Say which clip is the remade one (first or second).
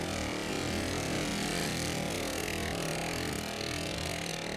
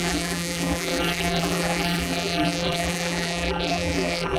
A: second